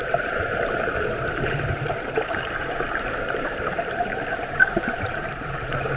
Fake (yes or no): yes